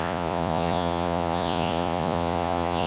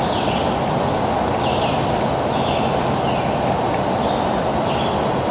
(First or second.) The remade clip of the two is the first